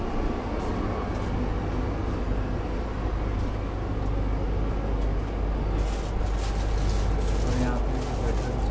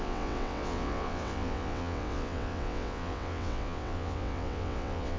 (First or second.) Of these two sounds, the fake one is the second